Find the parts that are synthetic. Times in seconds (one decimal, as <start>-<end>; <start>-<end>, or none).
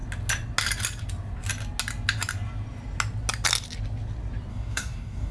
4.5-5.3